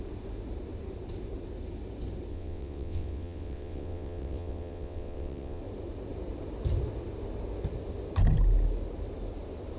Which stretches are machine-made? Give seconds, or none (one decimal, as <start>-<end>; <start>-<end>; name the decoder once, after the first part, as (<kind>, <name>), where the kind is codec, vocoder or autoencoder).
2.3-5.6 (vocoder, WaveNeXt)